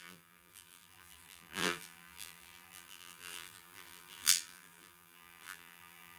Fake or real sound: fake